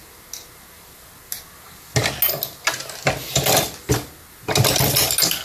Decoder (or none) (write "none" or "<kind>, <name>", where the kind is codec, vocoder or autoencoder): none